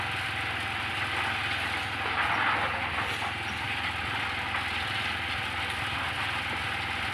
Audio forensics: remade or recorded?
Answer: recorded